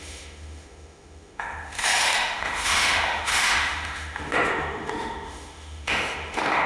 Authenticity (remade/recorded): remade